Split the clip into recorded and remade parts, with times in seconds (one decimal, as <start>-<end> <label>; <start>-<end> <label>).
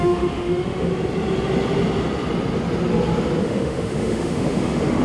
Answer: 0.0-0.9 remade; 0.9-3.4 recorded; 3.4-5.0 remade